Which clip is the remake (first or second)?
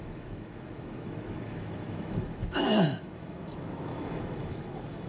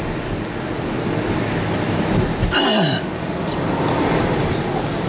first